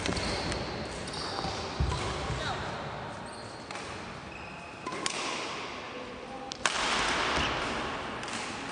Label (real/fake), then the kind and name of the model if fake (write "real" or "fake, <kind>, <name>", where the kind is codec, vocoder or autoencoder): real